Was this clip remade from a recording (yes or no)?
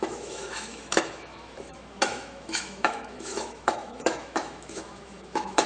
yes